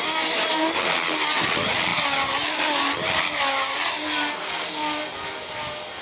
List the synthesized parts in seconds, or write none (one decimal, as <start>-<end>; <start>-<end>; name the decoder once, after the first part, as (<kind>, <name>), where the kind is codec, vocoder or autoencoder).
none